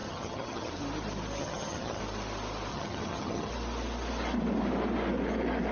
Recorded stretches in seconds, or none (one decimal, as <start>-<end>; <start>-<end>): 0.7-1.4; 2.0-2.7; 3.5-5.7